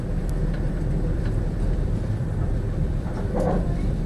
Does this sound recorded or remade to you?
remade